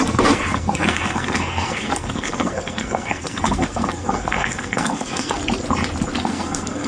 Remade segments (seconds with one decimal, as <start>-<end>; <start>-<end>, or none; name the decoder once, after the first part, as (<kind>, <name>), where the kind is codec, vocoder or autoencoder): 0.0-5.4 (codec, SNAC); 6.2-6.9